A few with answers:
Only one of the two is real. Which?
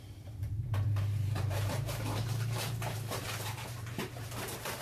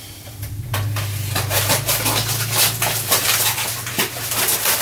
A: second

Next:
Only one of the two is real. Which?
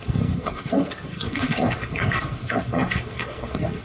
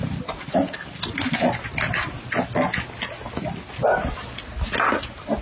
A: second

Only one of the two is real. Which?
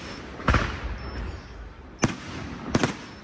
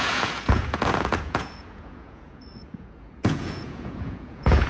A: first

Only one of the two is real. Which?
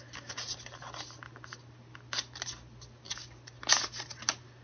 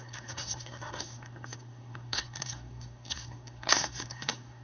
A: first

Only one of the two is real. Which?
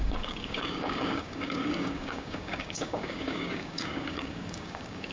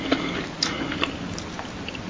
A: second